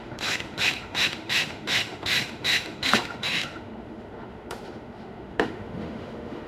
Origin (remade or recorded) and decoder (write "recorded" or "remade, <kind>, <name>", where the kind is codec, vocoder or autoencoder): remade, autoencoder, DAC-VAE